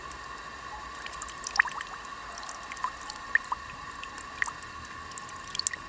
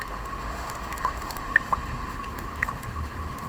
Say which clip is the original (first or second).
first